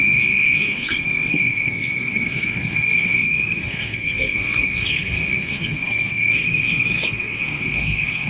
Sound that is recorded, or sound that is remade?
remade